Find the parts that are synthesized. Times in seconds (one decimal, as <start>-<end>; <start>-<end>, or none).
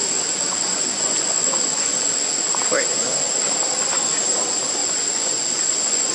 0.0-2.4; 4.8-6.1